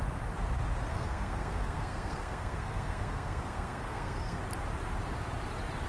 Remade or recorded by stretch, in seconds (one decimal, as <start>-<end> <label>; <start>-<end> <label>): 0.0-0.9 recorded; 0.9-4.4 remade; 4.4-5.9 recorded